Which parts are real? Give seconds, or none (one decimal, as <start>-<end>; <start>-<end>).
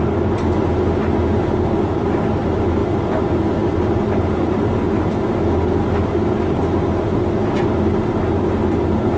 0.0-9.2